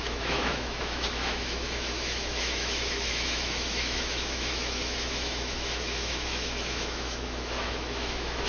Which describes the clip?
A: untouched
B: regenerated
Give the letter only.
B